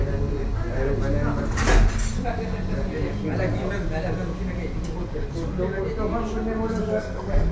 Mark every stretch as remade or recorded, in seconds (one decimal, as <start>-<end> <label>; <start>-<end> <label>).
0.0-6.8 recorded; 6.8-7.5 remade